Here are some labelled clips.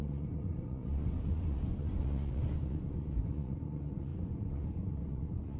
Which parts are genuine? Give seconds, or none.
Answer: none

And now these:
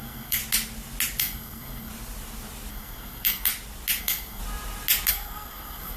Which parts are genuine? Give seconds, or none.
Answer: 0.4-1.2; 1.9-2.7; 3.5-4.0; 4.4-5.1

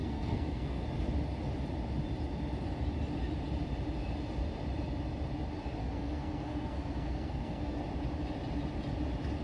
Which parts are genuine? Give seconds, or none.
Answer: 0.8-5.8; 7.8-9.4